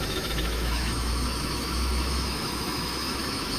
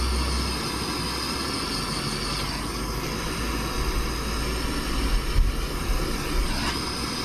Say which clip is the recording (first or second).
second